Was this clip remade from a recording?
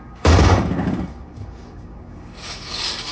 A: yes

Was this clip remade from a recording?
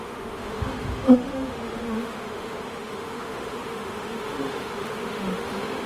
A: yes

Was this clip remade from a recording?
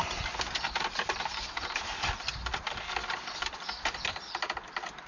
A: no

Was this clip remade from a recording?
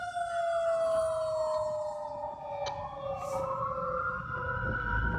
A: no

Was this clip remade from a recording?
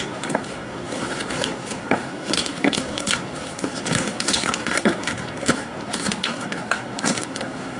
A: yes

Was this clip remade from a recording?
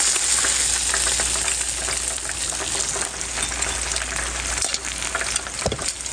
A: no